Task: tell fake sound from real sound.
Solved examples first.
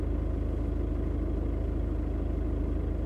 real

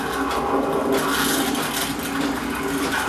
real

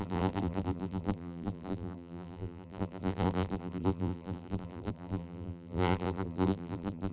fake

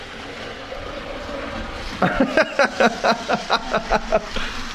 fake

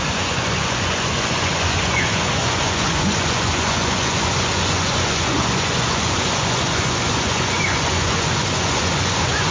fake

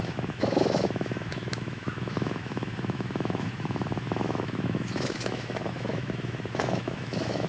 fake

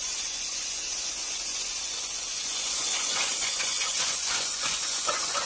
fake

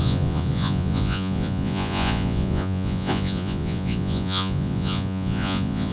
fake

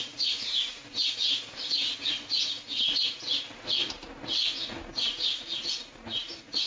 real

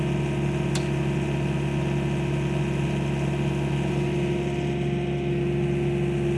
real